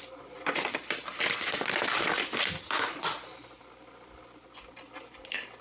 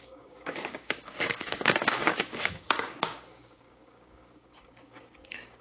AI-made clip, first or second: second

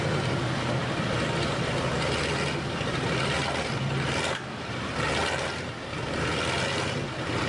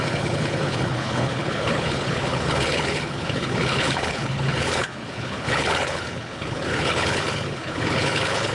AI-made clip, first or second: second